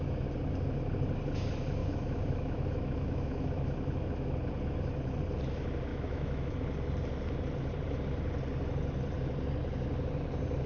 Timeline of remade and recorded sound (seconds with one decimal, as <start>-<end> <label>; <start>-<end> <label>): 0.0-1.8 recorded; 1.8-4.3 remade; 4.3-5.9 recorded; 5.9-6.5 remade; 6.5-10.7 recorded